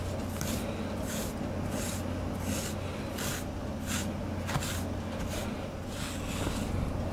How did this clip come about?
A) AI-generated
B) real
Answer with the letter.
B